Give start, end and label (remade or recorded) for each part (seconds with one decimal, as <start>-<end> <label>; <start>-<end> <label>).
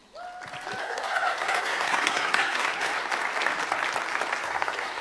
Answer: 0.0-0.8 recorded; 0.8-2.9 remade; 2.9-4.4 recorded; 4.4-5.0 remade